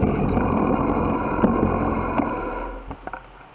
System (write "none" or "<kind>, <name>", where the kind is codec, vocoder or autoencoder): none